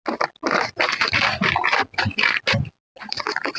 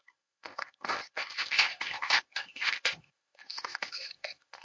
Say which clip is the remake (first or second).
second